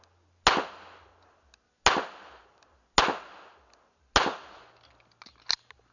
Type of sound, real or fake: real